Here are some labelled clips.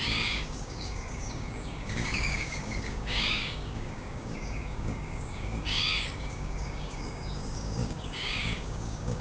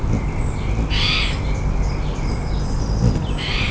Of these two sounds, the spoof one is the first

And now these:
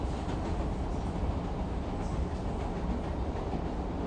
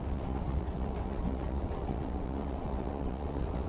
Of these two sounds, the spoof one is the second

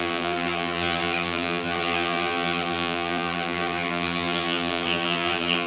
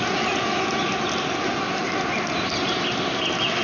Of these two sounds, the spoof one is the first